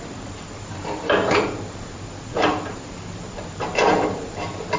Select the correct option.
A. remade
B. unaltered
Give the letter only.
A